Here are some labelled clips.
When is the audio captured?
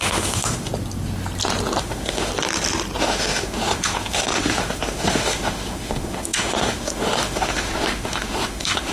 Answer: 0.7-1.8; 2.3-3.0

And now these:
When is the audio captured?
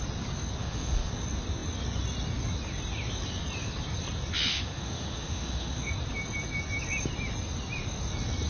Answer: 0.0-0.6; 1.1-4.5; 5.9-8.5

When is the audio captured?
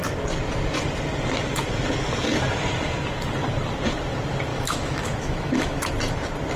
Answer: 0.0-4.5; 5.9-6.6